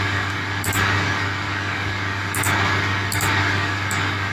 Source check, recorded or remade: remade